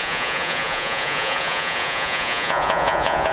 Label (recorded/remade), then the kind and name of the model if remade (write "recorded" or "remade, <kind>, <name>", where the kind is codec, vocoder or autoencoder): remade, vocoder, Vocos